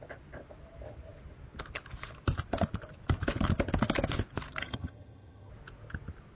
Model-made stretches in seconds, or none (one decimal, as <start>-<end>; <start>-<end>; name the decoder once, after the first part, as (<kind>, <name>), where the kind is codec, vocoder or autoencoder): 4.6-5.5 (vocoder, HiFi-GAN)